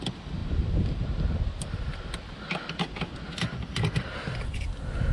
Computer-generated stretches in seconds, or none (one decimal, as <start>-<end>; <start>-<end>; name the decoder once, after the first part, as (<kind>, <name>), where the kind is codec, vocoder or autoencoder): none